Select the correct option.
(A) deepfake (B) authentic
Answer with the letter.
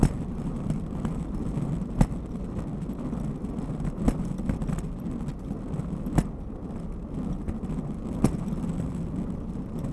B